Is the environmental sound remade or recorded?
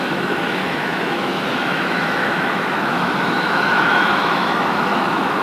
remade